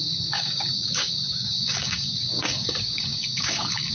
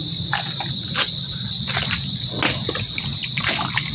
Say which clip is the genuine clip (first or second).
second